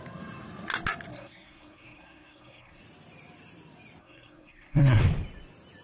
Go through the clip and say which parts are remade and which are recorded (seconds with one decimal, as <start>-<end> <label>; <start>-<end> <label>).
0.0-1.1 recorded; 1.1-2.8 remade; 2.8-4.0 recorded; 4.0-5.0 remade; 5.0-5.8 recorded